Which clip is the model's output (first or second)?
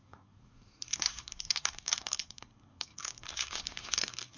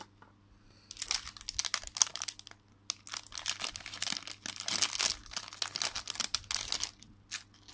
first